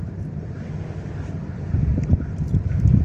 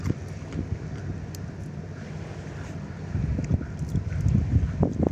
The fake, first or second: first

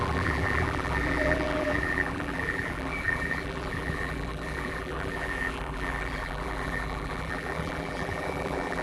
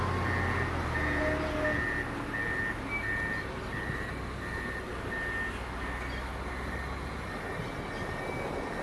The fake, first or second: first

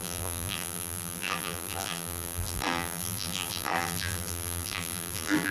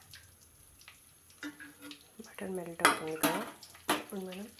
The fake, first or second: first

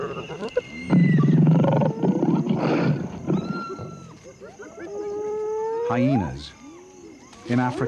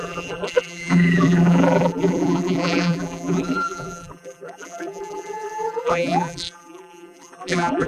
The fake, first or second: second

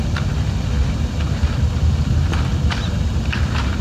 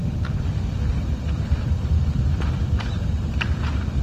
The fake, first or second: second